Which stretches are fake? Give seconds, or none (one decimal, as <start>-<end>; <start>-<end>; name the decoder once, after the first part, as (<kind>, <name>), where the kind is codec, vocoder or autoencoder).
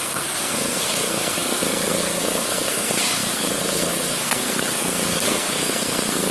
0.0-6.3 (codec, SNAC)